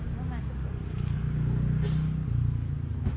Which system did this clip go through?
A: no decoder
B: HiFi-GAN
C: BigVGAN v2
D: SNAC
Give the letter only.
A